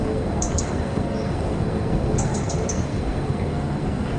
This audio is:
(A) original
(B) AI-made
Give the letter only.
B